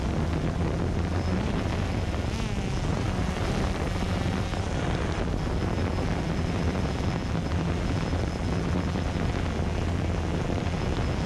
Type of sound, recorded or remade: recorded